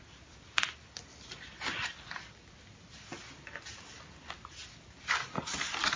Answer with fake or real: real